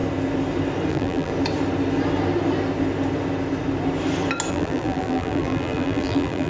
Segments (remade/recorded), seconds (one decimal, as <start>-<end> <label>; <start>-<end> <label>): 0.0-0.9 recorded; 0.9-1.3 remade; 1.3-4.5 recorded; 4.5-6.5 remade